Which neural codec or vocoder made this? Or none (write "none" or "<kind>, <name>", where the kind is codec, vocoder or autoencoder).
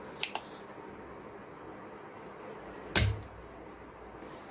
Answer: none